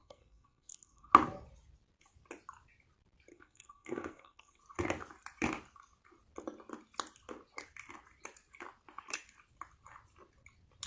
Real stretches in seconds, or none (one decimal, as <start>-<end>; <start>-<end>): 1.1-3.3; 4.6-10.9